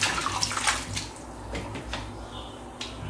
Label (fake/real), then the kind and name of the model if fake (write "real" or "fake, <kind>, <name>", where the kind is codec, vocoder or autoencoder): real